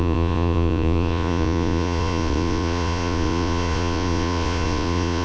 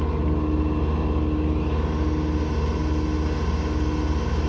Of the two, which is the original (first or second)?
second